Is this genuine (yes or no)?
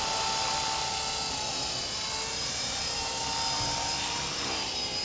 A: yes